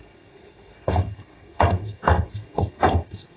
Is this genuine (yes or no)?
no